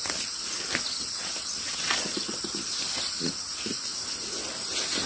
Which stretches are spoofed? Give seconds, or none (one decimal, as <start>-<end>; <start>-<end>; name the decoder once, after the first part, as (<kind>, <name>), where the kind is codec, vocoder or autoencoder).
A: 1.0-2.4 (vocoder, WaveNeXt)